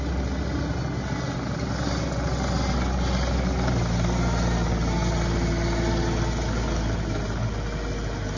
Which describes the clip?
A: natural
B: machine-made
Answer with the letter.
A